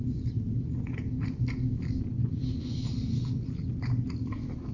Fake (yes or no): no